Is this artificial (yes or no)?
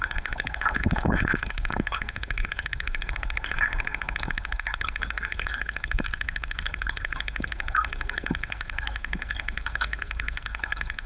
yes